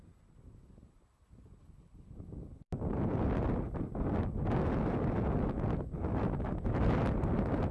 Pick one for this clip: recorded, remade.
recorded